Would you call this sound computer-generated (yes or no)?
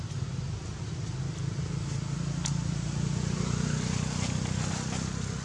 no